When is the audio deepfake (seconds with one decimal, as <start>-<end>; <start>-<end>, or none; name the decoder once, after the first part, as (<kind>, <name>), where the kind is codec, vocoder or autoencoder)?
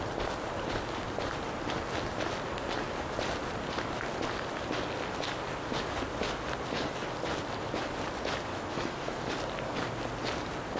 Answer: 8.5-9.3 (autoencoder, DAC-VAE)